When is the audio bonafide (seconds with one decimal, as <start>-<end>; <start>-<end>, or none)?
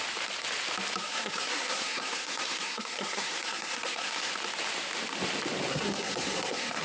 0.0-1.0; 4.3-5.7